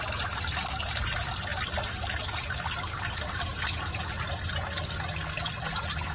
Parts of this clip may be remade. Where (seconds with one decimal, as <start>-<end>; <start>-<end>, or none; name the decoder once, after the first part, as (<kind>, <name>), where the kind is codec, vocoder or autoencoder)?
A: none